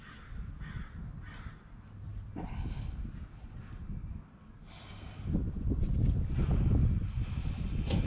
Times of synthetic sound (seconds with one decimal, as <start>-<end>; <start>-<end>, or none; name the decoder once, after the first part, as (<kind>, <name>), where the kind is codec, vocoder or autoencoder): none